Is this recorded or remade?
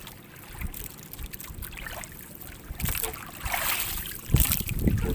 recorded